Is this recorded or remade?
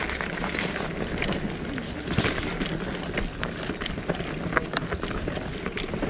recorded